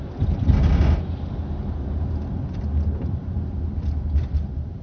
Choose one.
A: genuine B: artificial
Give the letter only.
A